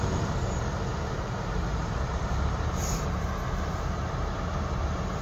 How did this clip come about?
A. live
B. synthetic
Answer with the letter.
B